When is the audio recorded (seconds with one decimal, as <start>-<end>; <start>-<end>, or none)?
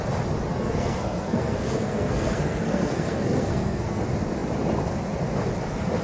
0.0-0.5; 4.0-6.0